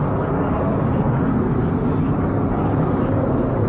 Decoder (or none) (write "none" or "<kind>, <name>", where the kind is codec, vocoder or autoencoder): none